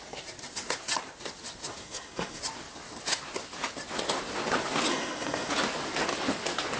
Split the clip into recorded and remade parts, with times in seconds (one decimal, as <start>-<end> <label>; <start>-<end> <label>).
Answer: 0.0-1.8 recorded; 1.8-2.4 remade; 2.4-4.9 recorded; 4.9-5.5 remade; 5.5-6.8 recorded